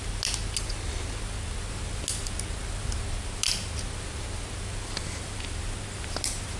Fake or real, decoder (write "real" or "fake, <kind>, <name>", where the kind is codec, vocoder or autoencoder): real